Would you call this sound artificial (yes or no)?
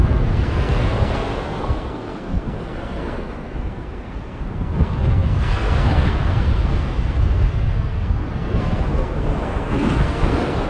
yes